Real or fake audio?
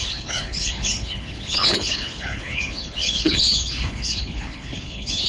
fake